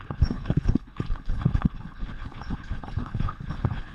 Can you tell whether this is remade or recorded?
remade